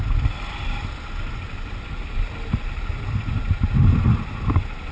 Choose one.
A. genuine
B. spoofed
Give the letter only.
A